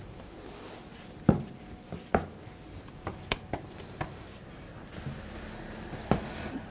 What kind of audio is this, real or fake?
real